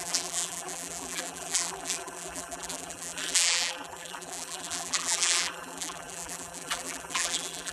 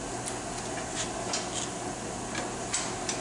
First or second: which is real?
second